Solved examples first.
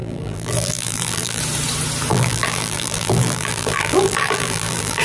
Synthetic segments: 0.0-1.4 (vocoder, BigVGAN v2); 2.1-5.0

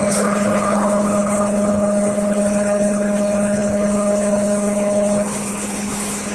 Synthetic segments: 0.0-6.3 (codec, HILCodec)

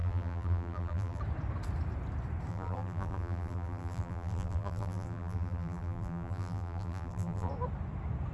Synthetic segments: 0.0-1.2 (vocoder, BigVGAN v2); 2.5-7.5

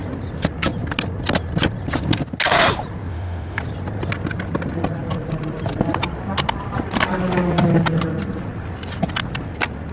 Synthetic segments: 3.1-3.6 (autoencoder, DAC-VAE)

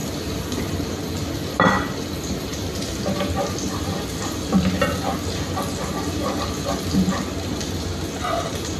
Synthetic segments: none